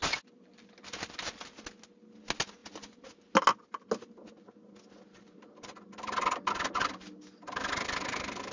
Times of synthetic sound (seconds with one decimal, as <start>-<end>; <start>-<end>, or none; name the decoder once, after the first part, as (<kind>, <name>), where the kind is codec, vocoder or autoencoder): none